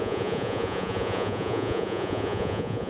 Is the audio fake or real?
fake